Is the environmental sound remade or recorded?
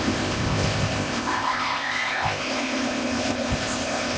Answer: remade